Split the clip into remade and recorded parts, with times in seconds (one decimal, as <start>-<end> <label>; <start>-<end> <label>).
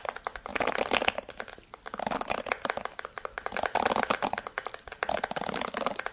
0.0-6.1 recorded